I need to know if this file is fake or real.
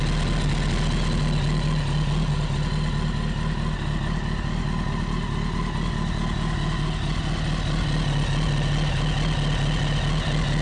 real